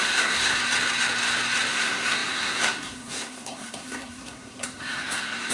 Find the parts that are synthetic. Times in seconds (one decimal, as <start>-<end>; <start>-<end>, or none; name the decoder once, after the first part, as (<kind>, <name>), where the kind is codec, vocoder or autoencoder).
0.0-0.6 (codec, SNAC); 1.7-5.5